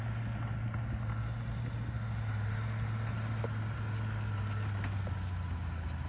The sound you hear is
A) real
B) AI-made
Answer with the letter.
A